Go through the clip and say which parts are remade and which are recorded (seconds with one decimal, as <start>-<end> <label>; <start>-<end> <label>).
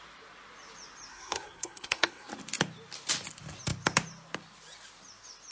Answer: 0.0-1.1 recorded; 1.1-2.3 remade; 2.3-5.5 recorded